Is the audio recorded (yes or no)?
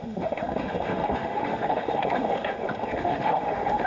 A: no